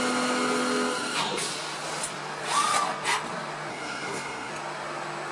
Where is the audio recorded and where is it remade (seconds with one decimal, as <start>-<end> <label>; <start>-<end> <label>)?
0.0-3.7 recorded; 3.7-4.5 remade; 4.5-5.3 recorded